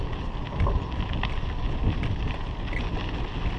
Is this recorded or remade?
recorded